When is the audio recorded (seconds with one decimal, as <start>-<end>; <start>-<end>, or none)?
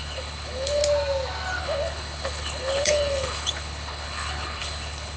0.8-1.6